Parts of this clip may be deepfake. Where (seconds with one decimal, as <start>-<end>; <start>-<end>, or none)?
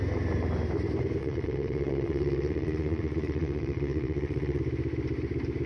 1.2-4.6